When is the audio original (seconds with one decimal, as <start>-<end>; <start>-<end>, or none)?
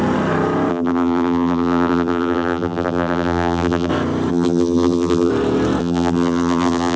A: 0.0-0.7; 3.9-4.3; 5.3-5.8